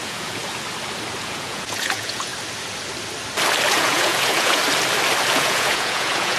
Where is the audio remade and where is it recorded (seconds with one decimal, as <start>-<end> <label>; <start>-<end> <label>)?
0.0-0.4 remade; 0.4-1.2 recorded; 1.2-2.3 remade; 2.3-3.7 recorded; 3.7-4.6 remade; 4.6-5.3 recorded; 5.3-6.4 remade